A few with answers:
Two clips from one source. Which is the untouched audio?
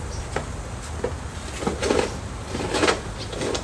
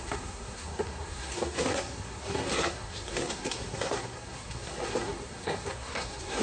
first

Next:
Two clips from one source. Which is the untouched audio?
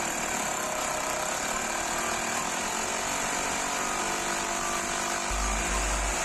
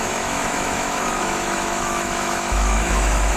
first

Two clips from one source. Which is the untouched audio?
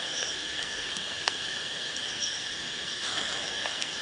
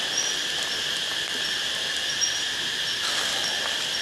second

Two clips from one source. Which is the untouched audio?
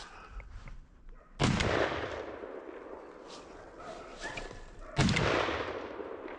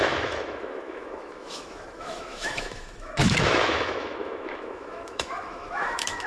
first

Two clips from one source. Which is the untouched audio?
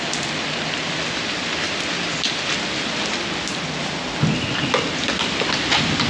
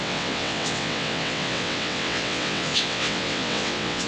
first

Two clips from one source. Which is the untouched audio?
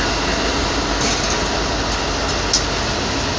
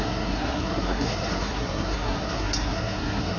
first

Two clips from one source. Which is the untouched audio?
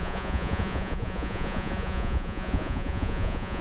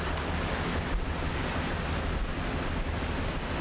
second